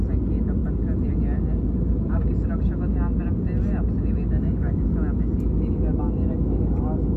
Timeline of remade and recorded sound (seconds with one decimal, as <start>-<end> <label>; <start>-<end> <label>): 0.0-7.2 recorded